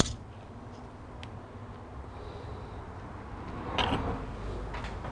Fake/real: real